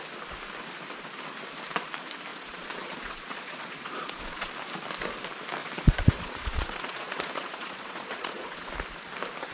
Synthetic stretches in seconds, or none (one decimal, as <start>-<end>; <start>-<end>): 2.3-4.5; 5.6-8.7